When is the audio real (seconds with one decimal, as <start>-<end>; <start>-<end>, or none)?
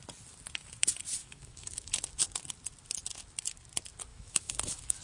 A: 0.0-1.2; 1.9-4.1